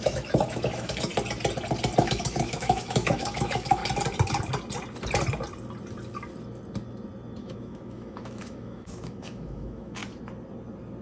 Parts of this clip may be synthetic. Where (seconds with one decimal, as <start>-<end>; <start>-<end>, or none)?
0.0-1.1; 2.0-3.8; 7.4-10.0